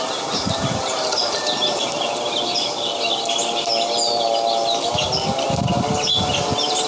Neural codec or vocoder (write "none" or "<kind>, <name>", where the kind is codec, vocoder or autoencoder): none